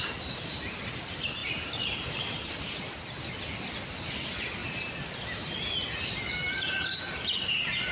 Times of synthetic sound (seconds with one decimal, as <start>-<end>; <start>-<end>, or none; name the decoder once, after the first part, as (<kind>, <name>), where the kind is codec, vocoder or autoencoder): 1.4-2.5 (vocoder, BigVGAN v2)